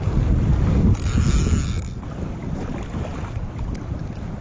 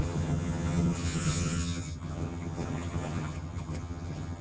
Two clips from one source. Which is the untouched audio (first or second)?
first